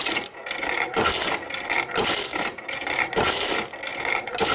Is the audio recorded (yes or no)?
yes